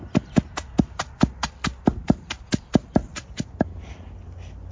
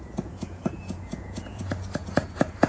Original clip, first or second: first